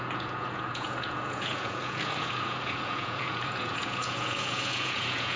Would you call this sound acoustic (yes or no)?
no